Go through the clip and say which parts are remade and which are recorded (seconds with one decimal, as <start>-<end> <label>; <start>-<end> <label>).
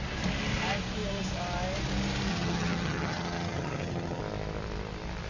0.0-2.3 recorded; 2.3-4.2 remade; 4.2-5.3 recorded